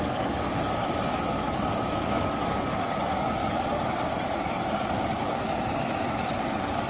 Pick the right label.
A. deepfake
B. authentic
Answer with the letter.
A